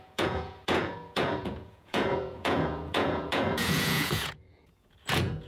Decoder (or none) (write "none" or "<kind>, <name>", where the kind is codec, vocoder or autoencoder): vocoder, Vocos